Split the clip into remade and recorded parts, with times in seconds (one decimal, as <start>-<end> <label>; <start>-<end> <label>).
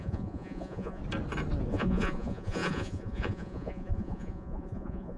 0.0-1.0 remade; 1.0-1.7 recorded; 1.7-5.2 remade